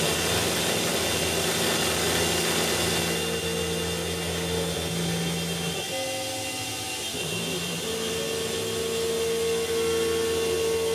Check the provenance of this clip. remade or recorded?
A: recorded